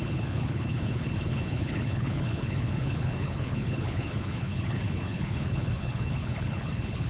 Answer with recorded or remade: remade